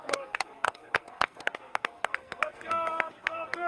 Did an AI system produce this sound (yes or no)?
yes